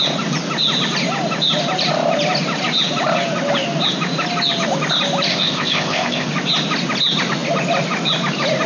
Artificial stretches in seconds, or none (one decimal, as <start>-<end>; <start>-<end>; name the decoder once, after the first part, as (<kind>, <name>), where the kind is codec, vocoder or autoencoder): 5.3-6.3 (codec, ZipCodec)